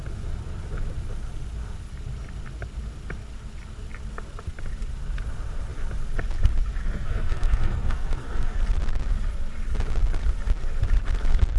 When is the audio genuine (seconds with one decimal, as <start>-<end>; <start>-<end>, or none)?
0.0-6.8; 8.6-11.6